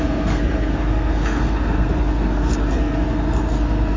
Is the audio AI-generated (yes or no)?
yes